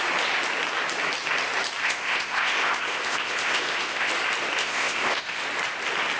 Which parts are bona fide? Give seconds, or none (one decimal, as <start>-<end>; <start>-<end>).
0.0-1.8; 4.1-4.6; 5.4-6.2